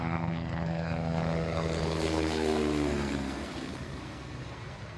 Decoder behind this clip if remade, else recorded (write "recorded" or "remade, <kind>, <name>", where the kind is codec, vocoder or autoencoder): remade, codec, SNAC